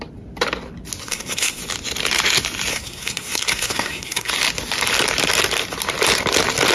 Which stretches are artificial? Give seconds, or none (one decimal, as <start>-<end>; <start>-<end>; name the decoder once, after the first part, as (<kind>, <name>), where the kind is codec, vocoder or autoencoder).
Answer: 1.0-1.6 (codec, SNAC); 2.7-4.3